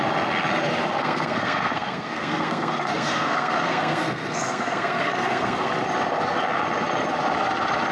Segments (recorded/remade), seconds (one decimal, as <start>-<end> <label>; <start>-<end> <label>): 0.0-1.0 recorded; 1.0-5.7 remade; 5.7-7.9 recorded